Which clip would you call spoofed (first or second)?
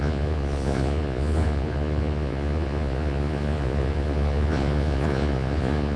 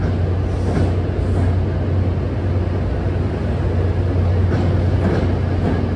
first